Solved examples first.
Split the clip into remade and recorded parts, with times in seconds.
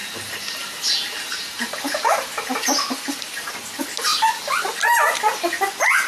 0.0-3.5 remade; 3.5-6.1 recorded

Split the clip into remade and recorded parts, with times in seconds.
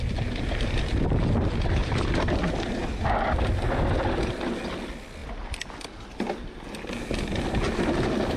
0.0-1.8 recorded; 1.8-3.0 remade; 3.0-8.4 recorded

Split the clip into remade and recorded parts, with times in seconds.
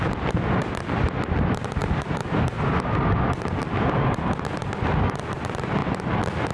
0.0-1.8 recorded; 1.8-4.1 remade; 4.1-6.5 recorded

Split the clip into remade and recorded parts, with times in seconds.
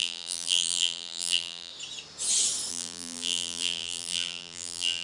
0.0-1.7 remade; 1.7-2.7 recorded; 2.7-5.0 remade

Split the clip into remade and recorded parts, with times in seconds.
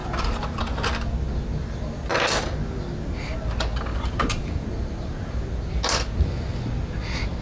0.0-3.9 recorded; 3.9-5.4 remade; 5.4-7.4 recorded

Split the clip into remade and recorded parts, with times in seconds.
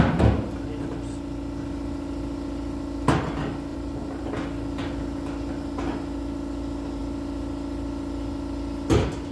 0.0-3.7 recorded; 3.7-4.3 remade; 4.3-9.3 recorded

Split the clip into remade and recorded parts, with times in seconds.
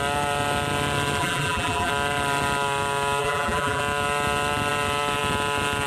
0.0-1.2 recorded; 1.2-1.9 remade; 1.9-3.2 recorded; 3.2-3.8 remade; 3.8-5.9 recorded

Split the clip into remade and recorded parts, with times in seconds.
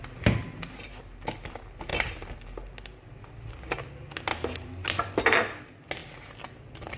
0.0-7.0 recorded